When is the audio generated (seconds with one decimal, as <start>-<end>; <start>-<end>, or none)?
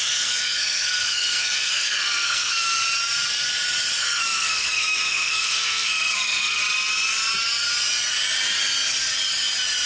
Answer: 0.0-2.8; 4.0-6.6